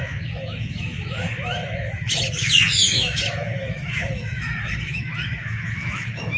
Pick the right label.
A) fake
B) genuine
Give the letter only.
A